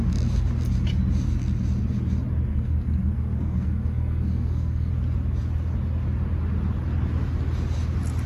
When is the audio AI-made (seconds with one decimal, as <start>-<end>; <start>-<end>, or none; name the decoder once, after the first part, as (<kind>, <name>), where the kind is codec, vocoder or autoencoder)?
2.5-4.9 (codec, SNAC)